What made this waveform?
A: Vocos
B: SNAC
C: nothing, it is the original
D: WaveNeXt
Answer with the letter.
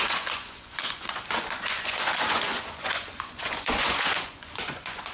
A